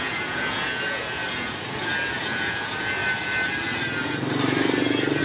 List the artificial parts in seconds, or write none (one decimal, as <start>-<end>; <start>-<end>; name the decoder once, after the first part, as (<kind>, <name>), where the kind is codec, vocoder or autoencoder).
0.0-3.0 (vocoder, Vocos)